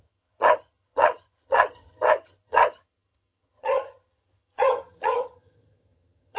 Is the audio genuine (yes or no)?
no